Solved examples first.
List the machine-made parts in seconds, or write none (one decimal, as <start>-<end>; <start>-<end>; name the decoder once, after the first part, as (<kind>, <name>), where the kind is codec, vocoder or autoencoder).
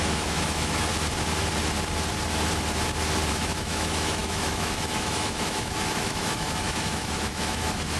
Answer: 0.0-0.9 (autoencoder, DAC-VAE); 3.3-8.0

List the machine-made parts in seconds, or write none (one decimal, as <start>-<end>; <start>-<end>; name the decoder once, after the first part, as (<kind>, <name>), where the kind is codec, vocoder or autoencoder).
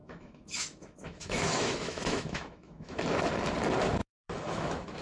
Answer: 0.0-3.0 (autoencoder, DAC-VAE); 4.0-5.0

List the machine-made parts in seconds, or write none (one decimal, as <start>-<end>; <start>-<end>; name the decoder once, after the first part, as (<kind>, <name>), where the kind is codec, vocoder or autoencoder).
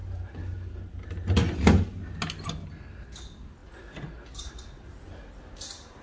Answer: none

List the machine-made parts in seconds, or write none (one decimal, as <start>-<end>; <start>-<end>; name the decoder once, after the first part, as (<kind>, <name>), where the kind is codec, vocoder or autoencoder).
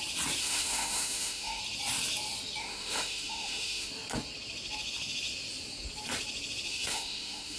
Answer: 0.4-1.6 (autoencoder, DAC-VAE); 2.6-3.9; 6.7-7.6